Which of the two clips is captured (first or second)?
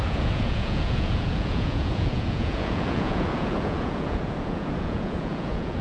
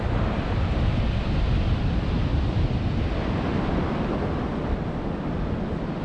second